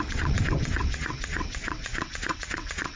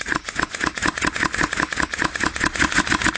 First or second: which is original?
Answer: second